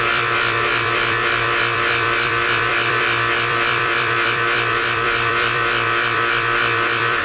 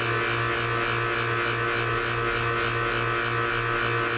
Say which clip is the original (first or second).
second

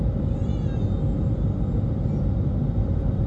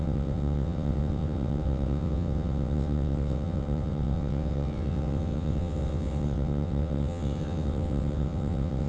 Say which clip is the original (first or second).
first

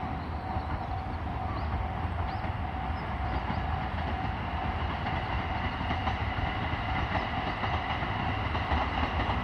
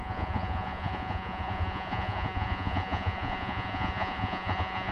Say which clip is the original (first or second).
first